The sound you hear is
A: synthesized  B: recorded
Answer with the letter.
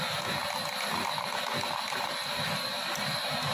B